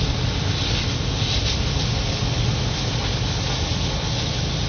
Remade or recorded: recorded